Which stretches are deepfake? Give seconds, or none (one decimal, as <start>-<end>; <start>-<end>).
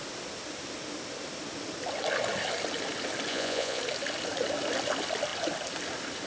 3.3-3.8